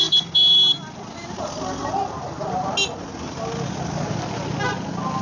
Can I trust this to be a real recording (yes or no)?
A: yes